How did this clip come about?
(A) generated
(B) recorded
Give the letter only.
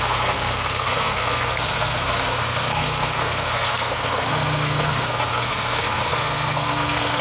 A